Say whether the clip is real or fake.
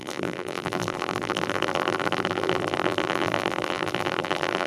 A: fake